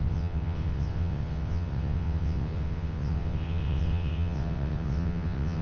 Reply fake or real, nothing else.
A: fake